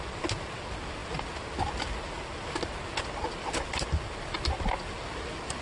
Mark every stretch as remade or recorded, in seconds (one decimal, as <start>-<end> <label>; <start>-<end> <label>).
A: 0.0-5.6 recorded